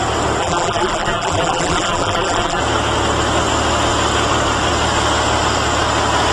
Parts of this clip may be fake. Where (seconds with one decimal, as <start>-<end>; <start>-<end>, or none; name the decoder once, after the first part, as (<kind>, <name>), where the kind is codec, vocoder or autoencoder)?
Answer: 0.4-2.6 (vocoder, BigVGAN v2)

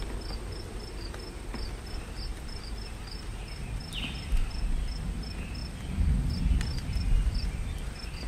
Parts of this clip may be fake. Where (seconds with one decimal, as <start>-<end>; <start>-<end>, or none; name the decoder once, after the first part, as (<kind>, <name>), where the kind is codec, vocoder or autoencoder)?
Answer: 2.3-3.8 (vocoder, BigVGAN v2)

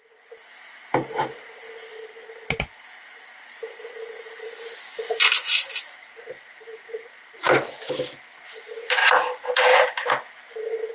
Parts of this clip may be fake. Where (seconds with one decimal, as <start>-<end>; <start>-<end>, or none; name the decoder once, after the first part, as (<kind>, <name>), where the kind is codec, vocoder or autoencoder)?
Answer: 3.6-7.7 (vocoder, BigVGAN v2); 9.0-10.1

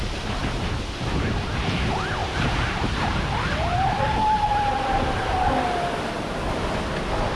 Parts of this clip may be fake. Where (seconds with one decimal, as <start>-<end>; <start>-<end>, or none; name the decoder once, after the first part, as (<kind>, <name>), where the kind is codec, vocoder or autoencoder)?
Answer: 2.2-6.1 (vocoder, BigVGAN v2)

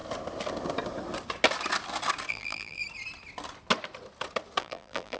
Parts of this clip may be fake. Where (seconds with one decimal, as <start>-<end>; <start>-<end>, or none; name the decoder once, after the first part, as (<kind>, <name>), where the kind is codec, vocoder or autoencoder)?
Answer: 2.3-2.8 (vocoder, BigVGAN v2); 4.6-5.2